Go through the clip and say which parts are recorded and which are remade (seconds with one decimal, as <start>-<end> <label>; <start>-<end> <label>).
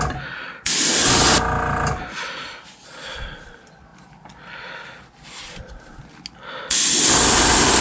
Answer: 0.0-7.8 recorded